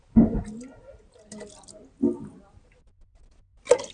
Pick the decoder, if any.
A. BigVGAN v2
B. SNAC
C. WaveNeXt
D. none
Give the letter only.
D